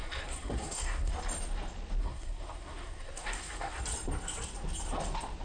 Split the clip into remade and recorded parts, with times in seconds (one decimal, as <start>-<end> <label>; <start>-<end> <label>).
0.0-1.1 remade; 1.1-2.0 recorded; 2.0-3.8 remade; 3.8-5.4 recorded